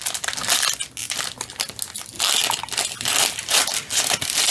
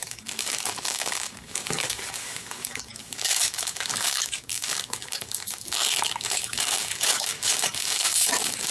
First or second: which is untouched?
first